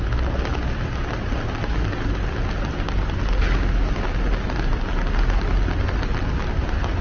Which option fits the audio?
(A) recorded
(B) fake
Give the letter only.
A